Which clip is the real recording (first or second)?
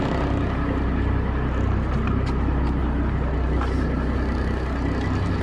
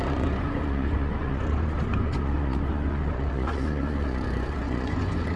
first